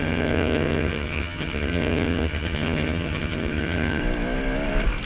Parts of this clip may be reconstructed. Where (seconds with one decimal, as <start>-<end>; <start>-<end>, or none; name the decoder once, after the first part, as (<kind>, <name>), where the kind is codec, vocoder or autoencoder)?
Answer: 0.0-4.0 (vocoder, HiFi-GAN)